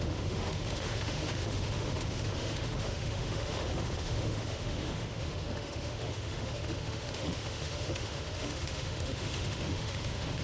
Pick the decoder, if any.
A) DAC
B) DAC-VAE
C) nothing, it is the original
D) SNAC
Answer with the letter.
B